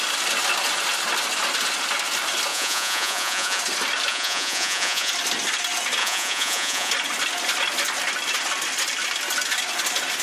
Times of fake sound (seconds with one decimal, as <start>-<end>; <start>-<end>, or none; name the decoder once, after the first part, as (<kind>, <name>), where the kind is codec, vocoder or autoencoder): 2.5-3.6 (vocoder, Vocos); 4.1-5.1; 6.0-6.9